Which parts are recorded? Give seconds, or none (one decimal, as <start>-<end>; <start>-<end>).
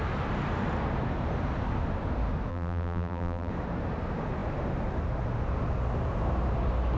0.0-2.5; 3.5-7.0